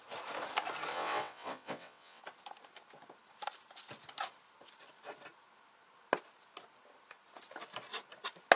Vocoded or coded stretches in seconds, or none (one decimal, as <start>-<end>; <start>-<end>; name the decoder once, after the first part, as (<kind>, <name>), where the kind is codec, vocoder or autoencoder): 0.9-2.2 (vocoder, WaveNeXt)